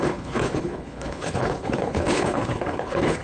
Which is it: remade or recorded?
remade